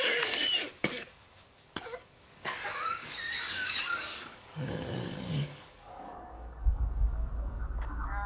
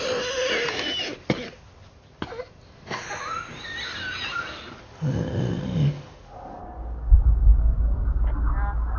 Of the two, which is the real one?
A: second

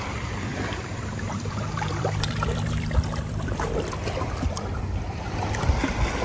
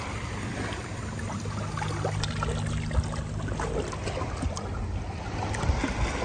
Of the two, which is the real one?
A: second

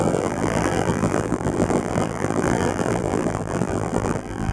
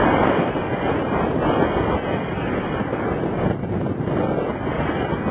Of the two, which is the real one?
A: second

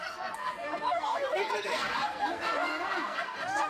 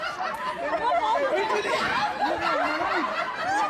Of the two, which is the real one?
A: second